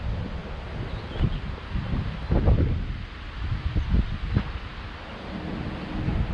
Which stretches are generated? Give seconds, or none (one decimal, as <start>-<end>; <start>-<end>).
none